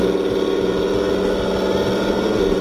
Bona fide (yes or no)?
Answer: yes